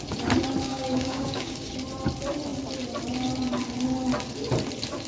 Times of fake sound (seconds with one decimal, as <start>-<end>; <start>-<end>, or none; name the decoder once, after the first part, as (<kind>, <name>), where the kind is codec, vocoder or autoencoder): 0.7-1.7 (codec, DAC)